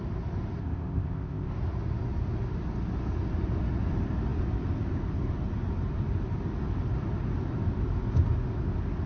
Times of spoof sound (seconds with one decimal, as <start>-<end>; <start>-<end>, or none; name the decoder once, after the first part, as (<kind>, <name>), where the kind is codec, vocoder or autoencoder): 0.6-1.5 (codec, ZipCodec)